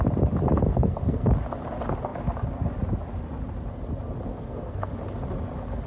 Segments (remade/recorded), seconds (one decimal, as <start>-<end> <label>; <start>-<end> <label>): 0.0-0.7 recorded; 0.7-1.3 remade; 1.3-4.3 recorded; 4.3-4.9 remade; 4.9-5.9 recorded